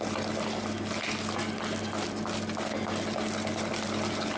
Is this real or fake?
real